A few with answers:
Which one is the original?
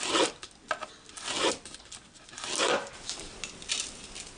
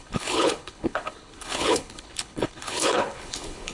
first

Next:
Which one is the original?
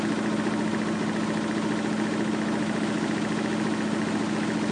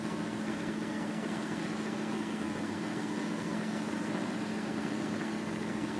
first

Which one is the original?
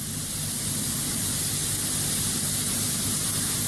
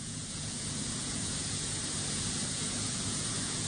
first